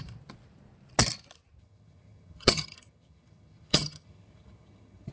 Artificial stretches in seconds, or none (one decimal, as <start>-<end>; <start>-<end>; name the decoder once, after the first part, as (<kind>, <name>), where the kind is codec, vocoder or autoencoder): 1.6-5.1 (vocoder, HiFi-GAN)